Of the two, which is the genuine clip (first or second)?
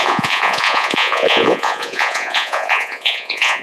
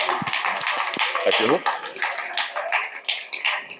second